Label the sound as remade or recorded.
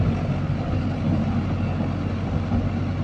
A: recorded